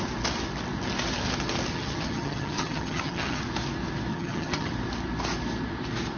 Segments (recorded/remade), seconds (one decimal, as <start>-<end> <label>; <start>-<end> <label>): 0.0-1.7 recorded; 1.7-3.4 remade; 3.4-4.1 recorded; 4.1-4.7 remade; 4.7-6.2 recorded